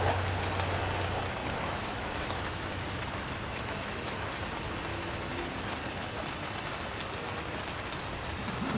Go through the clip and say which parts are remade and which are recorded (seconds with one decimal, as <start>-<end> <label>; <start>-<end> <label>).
0.0-1.4 recorded; 1.4-4.3 remade; 4.3-4.9 recorded; 4.9-5.5 remade; 5.5-8.8 recorded